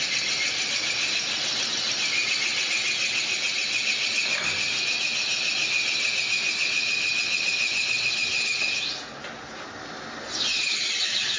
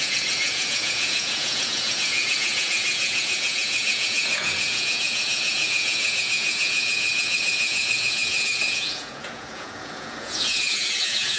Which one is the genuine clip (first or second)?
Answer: first